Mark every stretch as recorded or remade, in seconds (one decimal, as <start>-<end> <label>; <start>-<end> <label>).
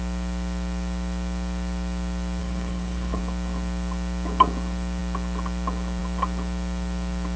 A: 0.0-2.4 recorded; 2.4-3.2 remade; 3.2-7.4 recorded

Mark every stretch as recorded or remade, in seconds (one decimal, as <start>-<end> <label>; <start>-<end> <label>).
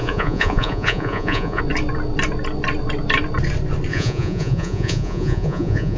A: 0.0-1.6 remade; 1.6-3.9 recorded; 3.9-6.0 remade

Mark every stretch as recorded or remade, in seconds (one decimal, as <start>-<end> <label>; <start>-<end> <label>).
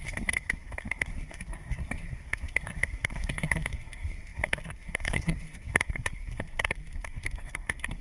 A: 0.0-8.0 remade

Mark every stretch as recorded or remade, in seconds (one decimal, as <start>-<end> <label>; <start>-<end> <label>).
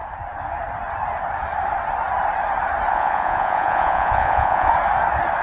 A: 0.0-2.9 recorded; 2.9-4.7 remade; 4.7-5.4 recorded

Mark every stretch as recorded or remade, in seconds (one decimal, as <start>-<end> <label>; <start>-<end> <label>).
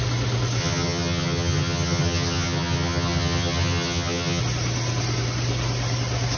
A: 0.0-0.6 recorded; 0.6-4.4 remade; 4.4-6.4 recorded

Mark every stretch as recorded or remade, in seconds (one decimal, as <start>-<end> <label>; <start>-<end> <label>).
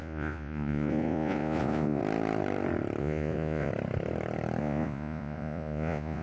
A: 0.0-2.0 remade; 2.0-3.0 recorded; 3.0-3.7 remade; 3.7-4.6 recorded; 4.6-6.2 remade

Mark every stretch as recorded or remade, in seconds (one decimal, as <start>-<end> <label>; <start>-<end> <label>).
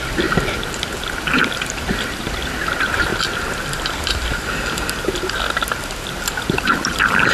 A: 0.0-3.1 remade; 3.1-6.1 recorded; 6.1-7.3 remade